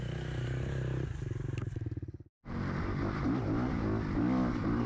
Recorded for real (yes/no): yes